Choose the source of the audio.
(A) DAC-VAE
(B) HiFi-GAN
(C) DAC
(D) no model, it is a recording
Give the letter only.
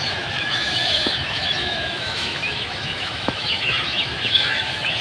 A